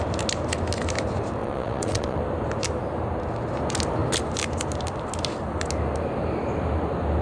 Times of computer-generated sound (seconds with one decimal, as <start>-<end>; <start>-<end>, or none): 1.4-2.2